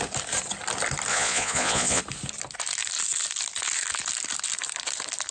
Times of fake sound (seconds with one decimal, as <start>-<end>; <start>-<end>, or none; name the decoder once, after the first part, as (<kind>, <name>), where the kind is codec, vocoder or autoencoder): 1.1-2.0 (vocoder, Vocos)